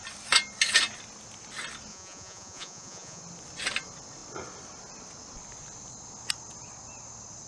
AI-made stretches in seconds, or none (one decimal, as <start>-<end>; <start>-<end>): 1.9-3.2